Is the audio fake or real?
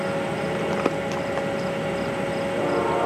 real